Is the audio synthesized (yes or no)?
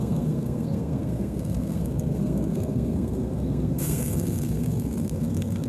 yes